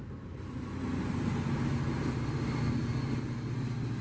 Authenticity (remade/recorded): recorded